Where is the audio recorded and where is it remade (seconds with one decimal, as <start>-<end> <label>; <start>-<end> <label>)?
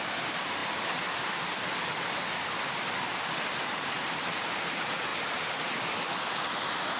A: 0.0-7.0 recorded